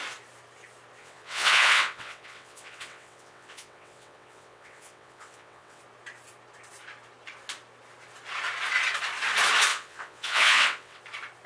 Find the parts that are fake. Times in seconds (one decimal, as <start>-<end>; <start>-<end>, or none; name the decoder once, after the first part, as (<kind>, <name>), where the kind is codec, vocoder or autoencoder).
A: 1.0-5.8 (vocoder, WaveNeXt); 9.7-11.0

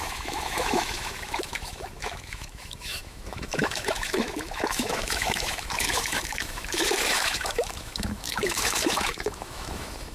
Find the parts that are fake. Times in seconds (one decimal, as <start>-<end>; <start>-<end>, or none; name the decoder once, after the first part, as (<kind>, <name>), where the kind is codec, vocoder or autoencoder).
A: 0.0-10.1 (autoencoder, DAC-VAE)

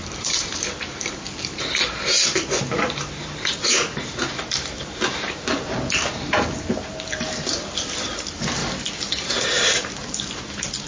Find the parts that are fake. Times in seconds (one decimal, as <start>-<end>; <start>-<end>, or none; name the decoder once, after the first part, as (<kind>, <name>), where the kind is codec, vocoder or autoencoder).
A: 0.0-8.6 (vocoder, BigVGAN v2); 9.1-10.9